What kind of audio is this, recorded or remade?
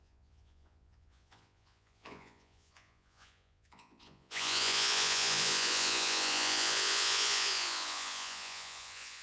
remade